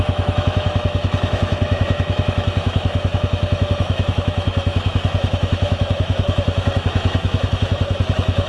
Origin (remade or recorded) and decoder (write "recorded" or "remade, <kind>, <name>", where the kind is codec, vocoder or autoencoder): remade, autoencoder, DAC-VAE